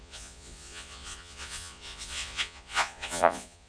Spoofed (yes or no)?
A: yes